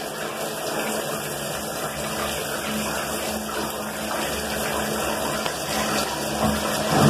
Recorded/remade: recorded